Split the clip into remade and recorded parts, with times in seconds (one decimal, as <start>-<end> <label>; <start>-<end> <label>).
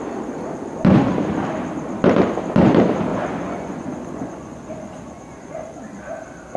0.0-3.1 recorded; 3.1-5.8 remade; 5.8-6.6 recorded